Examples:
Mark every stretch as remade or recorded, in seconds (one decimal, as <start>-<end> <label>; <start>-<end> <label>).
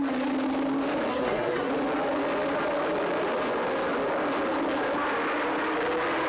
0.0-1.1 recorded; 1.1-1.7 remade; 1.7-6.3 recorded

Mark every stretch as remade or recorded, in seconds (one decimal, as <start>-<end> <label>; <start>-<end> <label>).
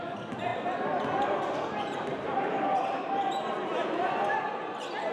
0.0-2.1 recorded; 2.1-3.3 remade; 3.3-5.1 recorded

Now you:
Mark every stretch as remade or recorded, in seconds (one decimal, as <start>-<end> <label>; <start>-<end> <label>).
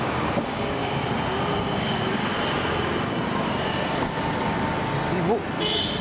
0.0-0.8 remade; 0.8-1.6 recorded; 1.6-2.3 remade; 2.3-6.0 recorded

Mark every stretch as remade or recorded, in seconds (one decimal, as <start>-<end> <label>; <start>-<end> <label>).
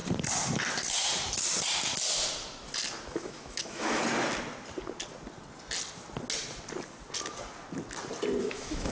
0.0-3.1 recorded; 3.1-4.0 remade; 4.0-8.4 recorded; 8.4-8.9 remade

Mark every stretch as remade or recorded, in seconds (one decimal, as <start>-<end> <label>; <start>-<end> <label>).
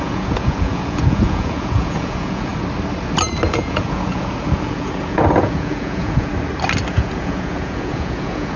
0.0-2.5 remade; 2.5-3.5 recorded; 3.5-6.3 remade; 6.3-6.9 recorded; 6.9-8.6 remade